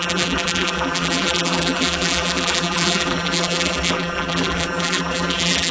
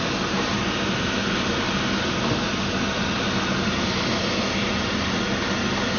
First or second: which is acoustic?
second